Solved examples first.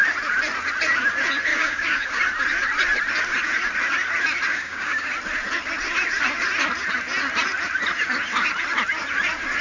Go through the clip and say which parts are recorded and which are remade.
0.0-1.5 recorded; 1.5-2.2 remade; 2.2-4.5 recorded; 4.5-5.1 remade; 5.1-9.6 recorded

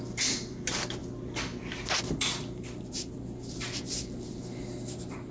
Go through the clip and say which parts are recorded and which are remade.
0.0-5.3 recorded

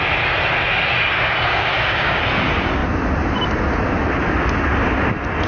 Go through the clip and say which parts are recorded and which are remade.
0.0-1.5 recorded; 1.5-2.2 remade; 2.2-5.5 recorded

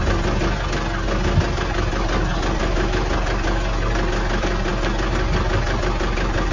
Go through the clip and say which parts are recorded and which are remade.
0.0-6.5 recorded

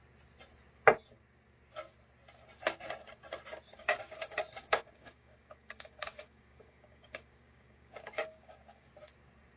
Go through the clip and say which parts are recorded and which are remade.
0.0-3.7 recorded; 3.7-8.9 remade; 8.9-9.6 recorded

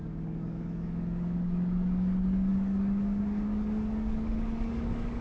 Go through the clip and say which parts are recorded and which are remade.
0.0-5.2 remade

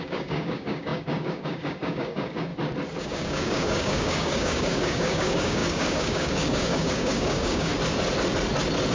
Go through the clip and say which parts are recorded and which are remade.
0.0-2.5 remade; 2.5-3.0 recorded; 3.0-7.7 remade; 7.7-8.9 recorded